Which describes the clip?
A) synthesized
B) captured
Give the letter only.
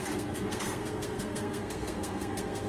A